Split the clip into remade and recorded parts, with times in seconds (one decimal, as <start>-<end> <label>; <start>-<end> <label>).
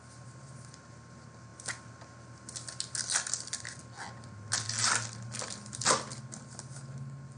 0.0-7.4 recorded